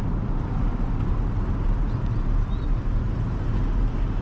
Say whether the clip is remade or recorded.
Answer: recorded